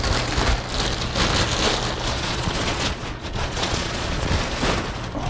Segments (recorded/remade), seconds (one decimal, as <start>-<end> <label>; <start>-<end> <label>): 0.0-2.1 recorded; 2.1-4.3 remade; 4.3-5.3 recorded